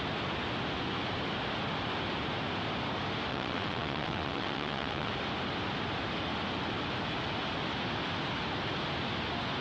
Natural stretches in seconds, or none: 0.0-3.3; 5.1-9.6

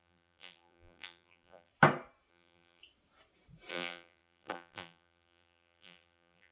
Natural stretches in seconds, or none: 1.7-2.3; 2.8-3.7